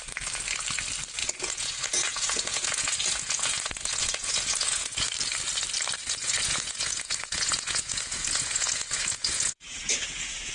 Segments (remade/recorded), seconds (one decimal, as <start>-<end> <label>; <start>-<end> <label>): 0.0-1.2 recorded; 1.2-5.1 remade; 5.1-6.0 recorded; 6.0-10.5 remade